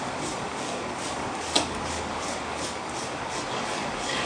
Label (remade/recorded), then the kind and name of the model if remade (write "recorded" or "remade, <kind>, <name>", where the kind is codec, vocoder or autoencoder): remade, codec, DAC